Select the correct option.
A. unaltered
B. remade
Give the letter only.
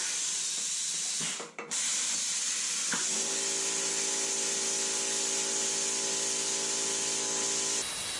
A